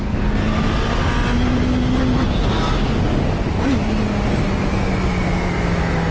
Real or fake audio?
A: real